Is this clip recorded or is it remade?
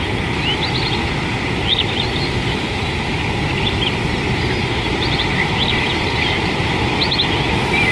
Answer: recorded